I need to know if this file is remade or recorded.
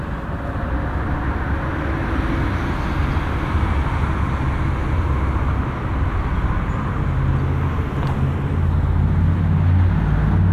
recorded